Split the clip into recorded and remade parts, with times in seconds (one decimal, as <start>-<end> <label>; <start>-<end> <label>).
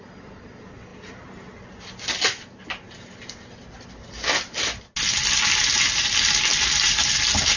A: 0.0-7.6 recorded